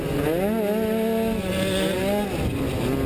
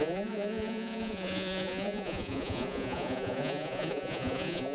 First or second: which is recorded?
first